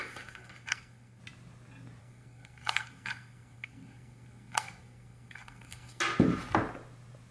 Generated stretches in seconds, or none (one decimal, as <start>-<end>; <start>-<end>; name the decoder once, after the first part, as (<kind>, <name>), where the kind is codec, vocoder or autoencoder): 0.0-1.2 (codec, SNAC); 2.0-6.0

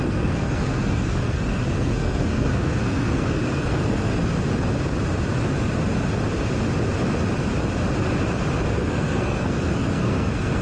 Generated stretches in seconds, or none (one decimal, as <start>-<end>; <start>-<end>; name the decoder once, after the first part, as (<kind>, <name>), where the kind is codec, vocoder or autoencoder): 0.0-4.1 (codec, SNAC); 8.7-10.6

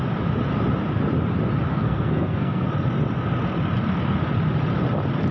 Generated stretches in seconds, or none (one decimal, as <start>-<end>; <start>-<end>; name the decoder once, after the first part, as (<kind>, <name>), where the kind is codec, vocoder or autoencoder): 1.7-2.7 (codec, SNAC)